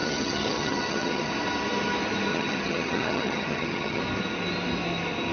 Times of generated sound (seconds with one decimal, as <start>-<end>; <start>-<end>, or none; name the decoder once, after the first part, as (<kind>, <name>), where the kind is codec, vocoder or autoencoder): 0.0-1.3 (vocoder, HiFi-GAN); 2.3-4.0